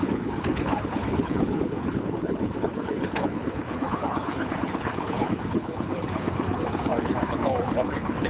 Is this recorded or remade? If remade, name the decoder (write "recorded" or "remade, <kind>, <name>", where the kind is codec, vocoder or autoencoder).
remade, codec, HILCodec